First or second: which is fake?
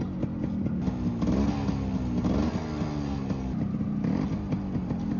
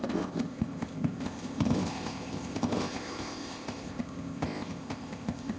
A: second